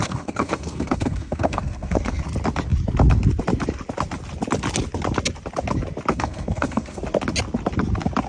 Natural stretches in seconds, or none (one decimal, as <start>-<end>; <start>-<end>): 2.2-6.1; 7.0-8.3